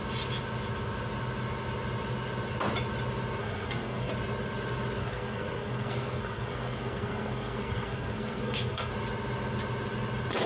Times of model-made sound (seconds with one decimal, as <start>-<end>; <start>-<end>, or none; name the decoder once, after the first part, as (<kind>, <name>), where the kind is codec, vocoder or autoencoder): 3.4-4.1 (codec, SNAC); 5.0-8.9